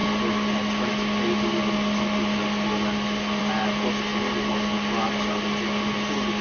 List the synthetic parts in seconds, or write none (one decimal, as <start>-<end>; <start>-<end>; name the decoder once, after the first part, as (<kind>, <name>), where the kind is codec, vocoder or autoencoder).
none